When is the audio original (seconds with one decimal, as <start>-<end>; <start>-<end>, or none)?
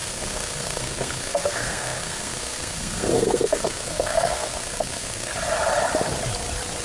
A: 5.3-6.8